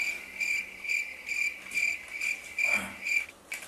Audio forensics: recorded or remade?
recorded